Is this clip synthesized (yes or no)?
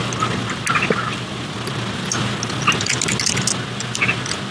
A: no